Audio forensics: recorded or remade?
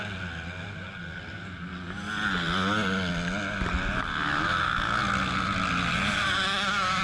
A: recorded